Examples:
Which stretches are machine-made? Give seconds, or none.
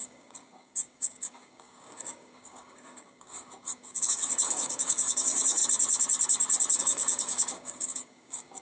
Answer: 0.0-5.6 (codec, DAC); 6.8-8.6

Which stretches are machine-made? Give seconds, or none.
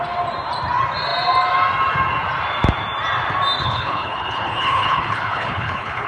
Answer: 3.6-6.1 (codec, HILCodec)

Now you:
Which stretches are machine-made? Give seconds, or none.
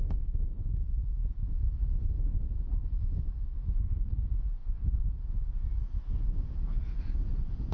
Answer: 0.0-2.8 (vocoder, Vocos); 3.9-4.6; 6.0-7.7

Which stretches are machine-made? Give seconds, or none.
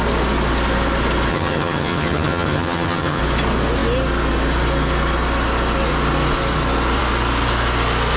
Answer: 1.3-3.2 (vocoder, HiFi-GAN)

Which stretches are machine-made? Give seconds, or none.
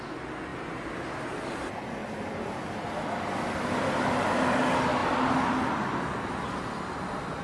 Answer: none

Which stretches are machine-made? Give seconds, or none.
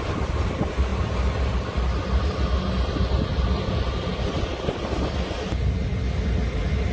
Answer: none